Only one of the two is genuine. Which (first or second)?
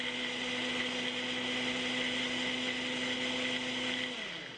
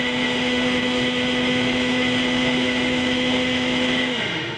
first